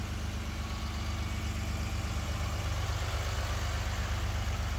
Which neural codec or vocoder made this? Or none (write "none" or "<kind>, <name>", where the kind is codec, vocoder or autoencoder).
none